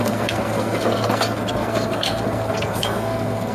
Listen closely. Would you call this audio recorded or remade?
remade